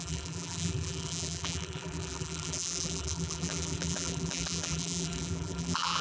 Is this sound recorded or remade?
remade